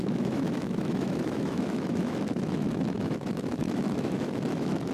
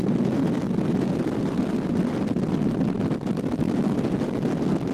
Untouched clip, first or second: second